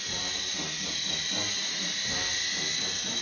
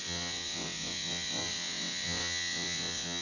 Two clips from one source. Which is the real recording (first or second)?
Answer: first